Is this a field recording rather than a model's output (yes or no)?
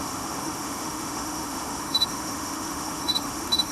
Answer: no